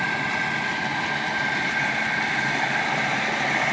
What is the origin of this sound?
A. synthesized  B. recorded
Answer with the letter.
B